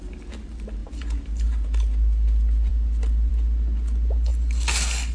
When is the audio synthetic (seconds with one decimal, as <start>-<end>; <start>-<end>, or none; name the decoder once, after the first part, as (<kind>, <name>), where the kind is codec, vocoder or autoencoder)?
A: 0.8-1.4 (vocoder, BigVGAN v2)